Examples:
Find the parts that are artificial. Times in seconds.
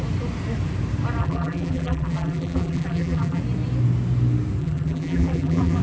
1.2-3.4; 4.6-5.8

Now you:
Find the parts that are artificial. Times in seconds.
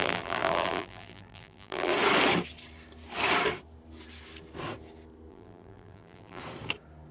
0.0-1.9; 5.3-6.4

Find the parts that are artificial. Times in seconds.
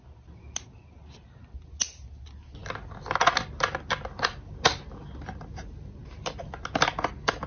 none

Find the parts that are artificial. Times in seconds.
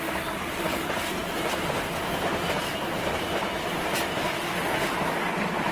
0.0-5.7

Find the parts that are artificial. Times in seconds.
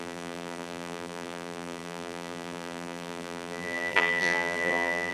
0.0-5.1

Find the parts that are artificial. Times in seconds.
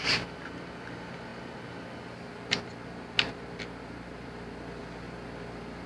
none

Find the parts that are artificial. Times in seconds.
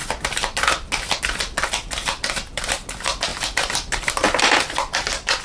1.2-5.4